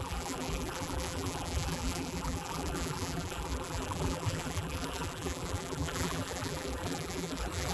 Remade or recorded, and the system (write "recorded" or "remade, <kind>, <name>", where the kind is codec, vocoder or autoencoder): remade, vocoder, BigVGAN v2